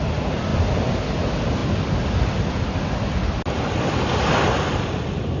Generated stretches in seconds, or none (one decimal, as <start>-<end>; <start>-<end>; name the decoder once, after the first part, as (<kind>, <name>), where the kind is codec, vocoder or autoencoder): none